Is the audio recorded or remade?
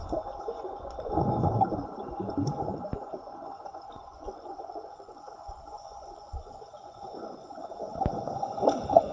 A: remade